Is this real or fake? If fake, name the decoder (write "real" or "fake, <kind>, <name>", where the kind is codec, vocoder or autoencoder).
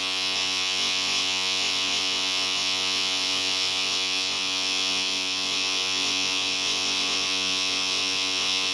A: fake, vocoder, Vocos